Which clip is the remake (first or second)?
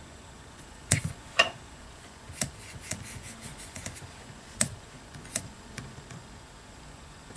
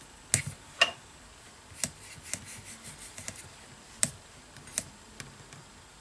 first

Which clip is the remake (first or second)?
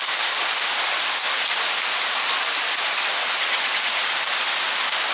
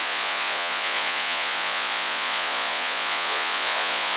second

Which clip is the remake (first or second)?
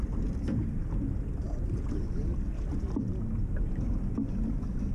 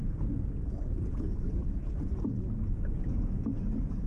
second